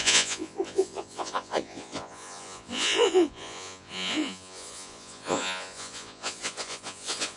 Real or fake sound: fake